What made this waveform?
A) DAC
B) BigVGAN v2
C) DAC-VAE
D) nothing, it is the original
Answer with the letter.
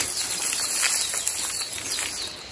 D